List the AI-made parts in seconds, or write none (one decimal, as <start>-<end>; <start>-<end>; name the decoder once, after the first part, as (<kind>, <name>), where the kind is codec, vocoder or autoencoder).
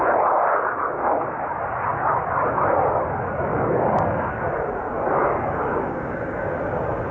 0.5-1.4 (codec, DAC); 3.5-4.3; 5.2-6.6